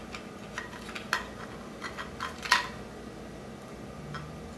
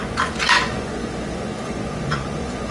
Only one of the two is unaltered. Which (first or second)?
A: first